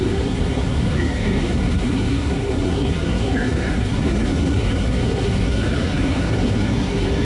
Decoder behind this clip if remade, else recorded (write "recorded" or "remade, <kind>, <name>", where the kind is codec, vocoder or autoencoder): remade, codec, SNAC